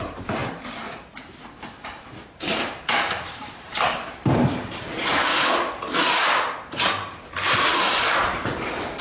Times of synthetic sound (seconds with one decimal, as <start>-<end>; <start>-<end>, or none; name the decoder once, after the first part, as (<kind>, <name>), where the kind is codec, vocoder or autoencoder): 0.0-5.3 (vocoder, BigVGAN v2); 7.3-9.0